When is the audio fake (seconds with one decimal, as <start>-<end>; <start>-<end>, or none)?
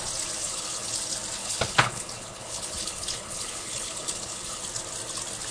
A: 0.4-0.9; 1.4-4.6